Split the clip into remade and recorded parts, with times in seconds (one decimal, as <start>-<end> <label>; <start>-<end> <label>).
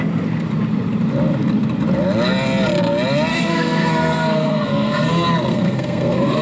0.0-3.3 recorded; 3.3-5.1 remade; 5.1-5.5 recorded; 5.5-6.4 remade